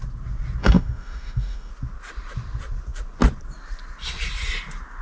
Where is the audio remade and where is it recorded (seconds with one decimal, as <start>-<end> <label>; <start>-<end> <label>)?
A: 0.0-0.6 recorded; 0.6-1.7 remade; 1.7-5.0 recorded

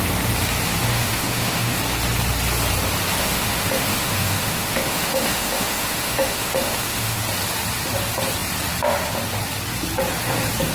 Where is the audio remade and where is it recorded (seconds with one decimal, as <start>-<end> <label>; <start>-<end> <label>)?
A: 0.0-0.9 recorded; 0.9-1.8 remade; 1.8-3.2 recorded; 3.2-7.2 remade; 7.2-10.7 recorded

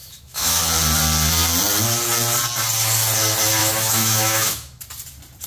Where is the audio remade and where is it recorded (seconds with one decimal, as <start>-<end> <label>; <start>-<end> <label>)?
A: 0.0-0.6 remade; 0.6-3.6 recorded; 3.6-4.8 remade; 4.8-5.5 recorded

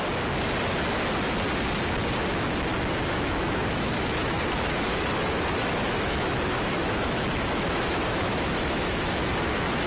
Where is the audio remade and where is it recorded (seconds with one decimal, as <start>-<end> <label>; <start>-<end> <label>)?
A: 0.0-3.1 recorded; 3.1-9.9 remade

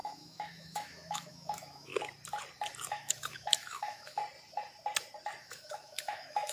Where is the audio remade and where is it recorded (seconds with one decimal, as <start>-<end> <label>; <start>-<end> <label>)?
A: 0.0-1.9 remade; 1.9-2.9 recorded; 2.9-4.2 remade; 4.2-5.4 recorded; 5.4-6.5 remade